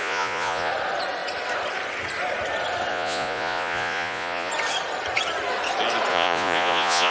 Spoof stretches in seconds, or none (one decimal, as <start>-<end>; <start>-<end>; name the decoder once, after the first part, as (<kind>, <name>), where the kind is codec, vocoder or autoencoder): 0.0-0.7 (vocoder, Vocos); 2.9-4.5; 6.1-7.1